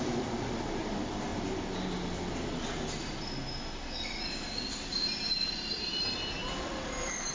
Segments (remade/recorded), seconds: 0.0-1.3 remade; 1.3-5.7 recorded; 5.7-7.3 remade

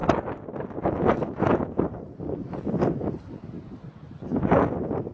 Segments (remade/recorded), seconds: 0.0-5.1 recorded

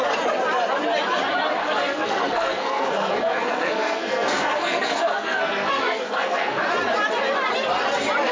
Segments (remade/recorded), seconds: 0.0-1.6 recorded; 1.6-6.6 remade; 6.6-8.3 recorded

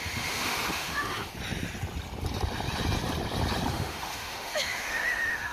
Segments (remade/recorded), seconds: 0.0-1.3 remade; 1.3-3.7 recorded; 3.7-5.5 remade

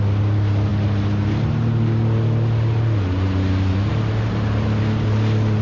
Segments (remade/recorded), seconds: 0.0-5.6 recorded

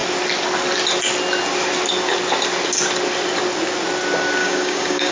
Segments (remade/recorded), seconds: 0.0-4.4 recorded; 4.4-5.1 remade

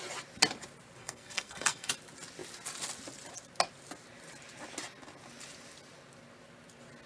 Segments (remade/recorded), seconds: 0.0-1.0 recorded; 1.0-1.9 remade; 1.9-7.1 recorded

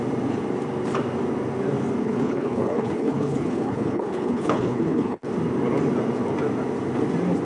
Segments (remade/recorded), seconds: 0.0-2.0 recorded; 2.0-5.3 remade; 5.3-7.4 recorded